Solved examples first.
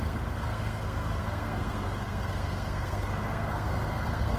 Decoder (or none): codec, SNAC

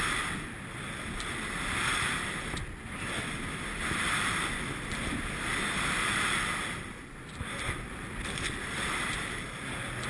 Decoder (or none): none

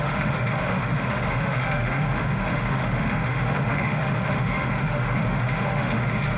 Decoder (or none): autoencoder, DAC-VAE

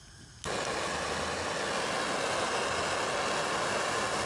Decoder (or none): none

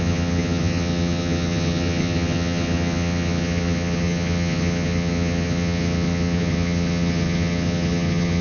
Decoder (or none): vocoder, HiFi-GAN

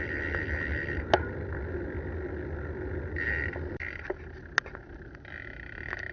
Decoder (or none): none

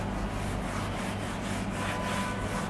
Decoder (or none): none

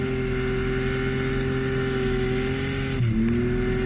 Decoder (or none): none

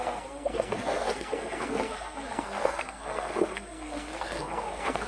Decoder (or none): codec, SNAC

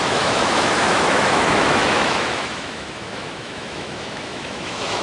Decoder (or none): autoencoder, DAC-VAE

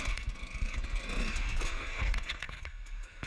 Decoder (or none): codec, SNAC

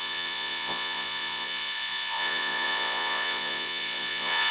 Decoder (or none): vocoder, Vocos